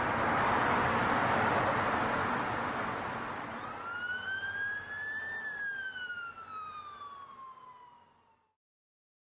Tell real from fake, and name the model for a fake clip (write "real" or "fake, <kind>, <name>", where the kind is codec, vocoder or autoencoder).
fake, vocoder, BigVGAN v2